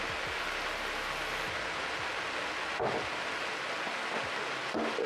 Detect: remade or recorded recorded